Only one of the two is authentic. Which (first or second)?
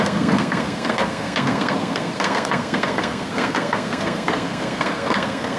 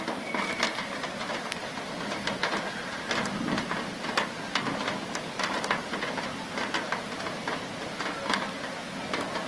second